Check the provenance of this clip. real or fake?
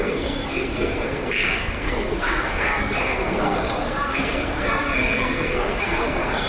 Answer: fake